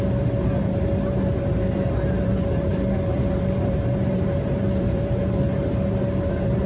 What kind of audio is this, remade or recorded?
remade